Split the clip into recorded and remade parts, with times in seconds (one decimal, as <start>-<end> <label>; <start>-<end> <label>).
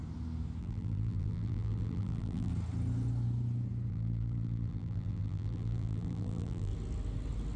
0.0-0.6 recorded; 0.6-2.5 remade; 2.5-3.9 recorded; 3.9-6.7 remade; 6.7-7.6 recorded